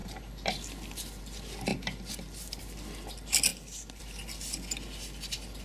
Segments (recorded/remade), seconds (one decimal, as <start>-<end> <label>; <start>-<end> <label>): 0.0-5.6 recorded